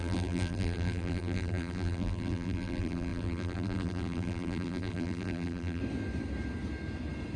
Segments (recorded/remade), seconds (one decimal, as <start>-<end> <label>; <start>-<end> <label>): 0.0-5.8 remade; 5.8-7.4 recorded